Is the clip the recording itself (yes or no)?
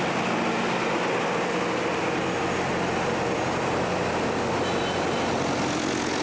yes